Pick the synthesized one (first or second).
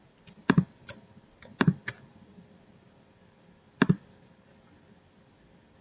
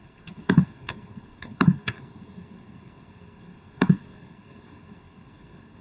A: second